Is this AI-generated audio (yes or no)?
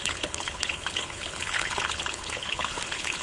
yes